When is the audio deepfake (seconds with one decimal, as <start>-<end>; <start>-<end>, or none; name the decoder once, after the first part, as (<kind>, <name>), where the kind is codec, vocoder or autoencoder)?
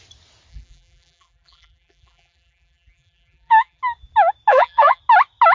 0.5-3.8 (vocoder, BigVGAN v2); 4.5-5.0